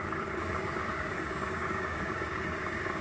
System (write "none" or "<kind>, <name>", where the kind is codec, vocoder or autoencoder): codec, DAC